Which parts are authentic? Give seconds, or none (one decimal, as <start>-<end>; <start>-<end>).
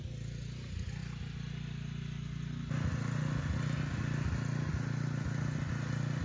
0.0-6.2